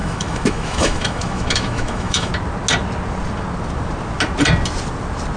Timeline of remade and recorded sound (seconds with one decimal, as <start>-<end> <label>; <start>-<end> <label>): 0.0-2.3 remade; 2.3-5.4 recorded